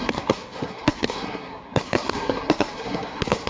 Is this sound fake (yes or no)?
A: yes